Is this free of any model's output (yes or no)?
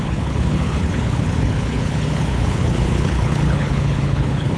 no